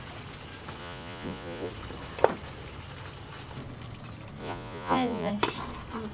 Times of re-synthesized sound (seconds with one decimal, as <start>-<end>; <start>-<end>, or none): 0.8-1.7; 4.4-5.3